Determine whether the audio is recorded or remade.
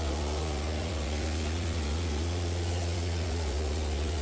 remade